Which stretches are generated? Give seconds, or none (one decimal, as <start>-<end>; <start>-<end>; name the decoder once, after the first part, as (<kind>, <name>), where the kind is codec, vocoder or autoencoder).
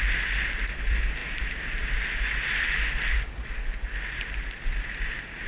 none